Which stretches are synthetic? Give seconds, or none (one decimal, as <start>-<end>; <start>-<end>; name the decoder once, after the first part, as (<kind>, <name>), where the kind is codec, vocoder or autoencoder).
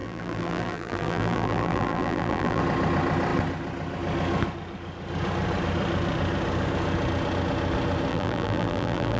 0.0-2.6 (vocoder, BigVGAN v2); 8.1-9.2